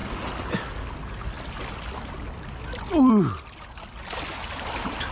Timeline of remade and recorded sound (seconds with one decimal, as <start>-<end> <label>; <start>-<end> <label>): 0.0-5.1 recorded